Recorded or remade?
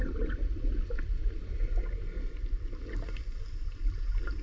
recorded